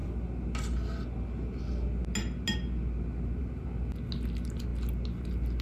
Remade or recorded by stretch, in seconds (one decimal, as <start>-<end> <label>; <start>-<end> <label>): 0.0-5.6 recorded